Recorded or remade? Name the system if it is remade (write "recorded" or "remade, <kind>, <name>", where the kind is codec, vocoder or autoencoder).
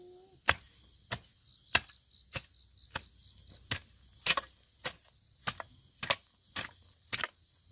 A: recorded